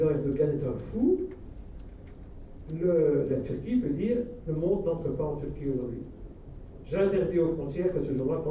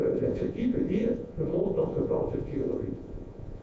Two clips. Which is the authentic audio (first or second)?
first